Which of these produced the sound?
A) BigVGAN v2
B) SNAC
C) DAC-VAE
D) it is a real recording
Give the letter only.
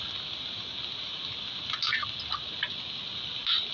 D